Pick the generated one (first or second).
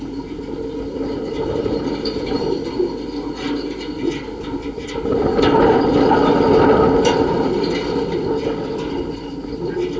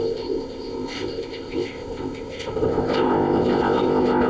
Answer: second